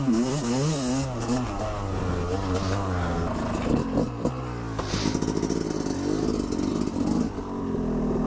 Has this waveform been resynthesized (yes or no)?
no